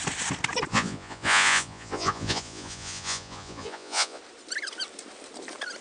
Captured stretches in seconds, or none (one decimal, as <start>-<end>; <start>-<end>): 0.0-0.7; 4.2-5.8